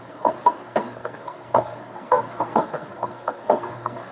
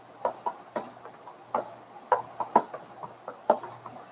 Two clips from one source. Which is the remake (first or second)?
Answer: first